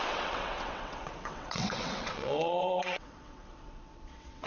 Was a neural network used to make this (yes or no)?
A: yes